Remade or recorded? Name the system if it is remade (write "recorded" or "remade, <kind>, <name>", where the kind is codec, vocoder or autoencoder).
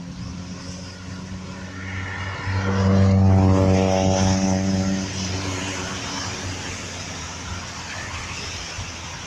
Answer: recorded